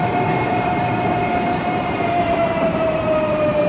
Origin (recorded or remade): remade